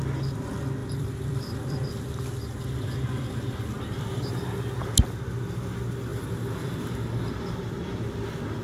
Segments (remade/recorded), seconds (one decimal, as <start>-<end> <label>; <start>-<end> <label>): 0.0-0.8 recorded; 0.8-4.6 remade; 4.6-6.1 recorded; 6.1-7.3 remade; 7.3-8.6 recorded